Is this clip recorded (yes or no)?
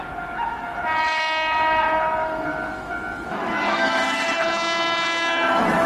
no